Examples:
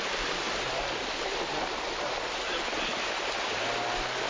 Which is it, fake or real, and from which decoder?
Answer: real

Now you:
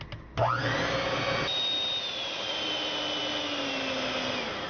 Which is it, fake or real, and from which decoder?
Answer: real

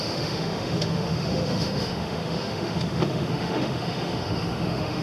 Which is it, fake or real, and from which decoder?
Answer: fake, autoencoder, DAC-VAE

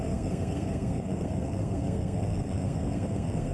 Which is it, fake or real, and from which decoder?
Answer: fake, codec, SNAC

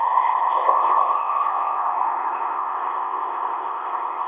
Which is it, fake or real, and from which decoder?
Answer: fake, codec, ZipCodec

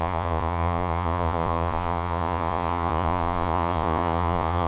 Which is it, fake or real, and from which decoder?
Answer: fake, vocoder, Vocos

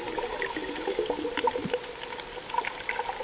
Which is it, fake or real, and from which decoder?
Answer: real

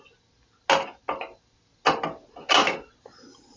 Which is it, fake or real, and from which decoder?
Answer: real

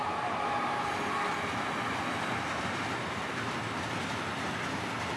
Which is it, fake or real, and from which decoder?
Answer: real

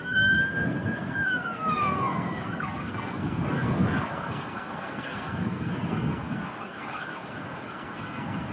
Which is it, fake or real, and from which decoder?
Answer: fake, codec, SNAC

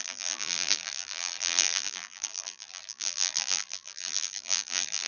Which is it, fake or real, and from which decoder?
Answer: fake, vocoder, BigVGAN v2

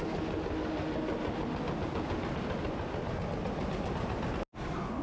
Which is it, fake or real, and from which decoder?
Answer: real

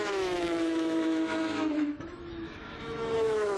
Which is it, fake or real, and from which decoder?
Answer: fake, autoencoder, DAC-VAE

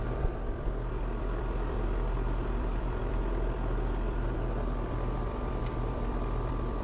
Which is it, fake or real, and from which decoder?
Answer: fake, vocoder, BigVGAN v2